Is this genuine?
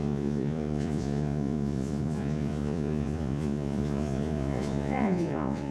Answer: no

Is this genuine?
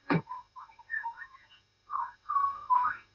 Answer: no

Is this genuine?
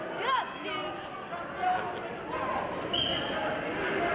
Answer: yes